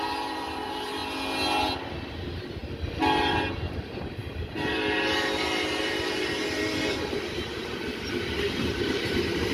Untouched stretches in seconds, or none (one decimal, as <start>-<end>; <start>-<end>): 1.0-2.1; 2.6-3.2